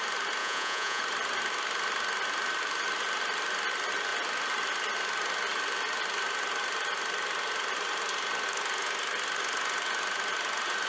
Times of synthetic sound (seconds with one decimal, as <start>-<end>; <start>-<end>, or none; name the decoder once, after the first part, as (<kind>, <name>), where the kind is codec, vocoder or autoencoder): 0.4-1.0 (vocoder, Vocos)